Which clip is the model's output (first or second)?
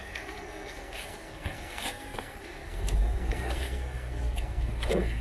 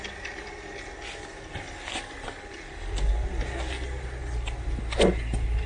first